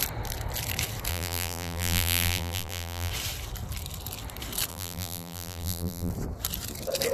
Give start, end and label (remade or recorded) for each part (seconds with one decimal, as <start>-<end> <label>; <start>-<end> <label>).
0.0-1.1 recorded; 1.1-3.1 remade; 3.1-4.7 recorded; 4.7-6.1 remade; 6.1-7.1 recorded